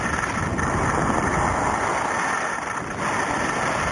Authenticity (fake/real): real